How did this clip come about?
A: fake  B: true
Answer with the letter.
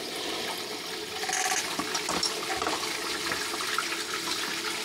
B